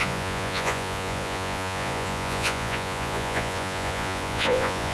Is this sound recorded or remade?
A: remade